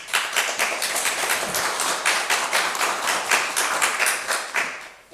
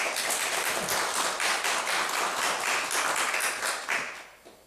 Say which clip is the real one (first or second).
second